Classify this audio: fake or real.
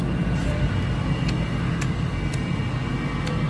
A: real